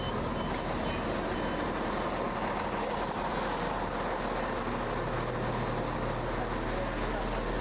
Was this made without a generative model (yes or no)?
yes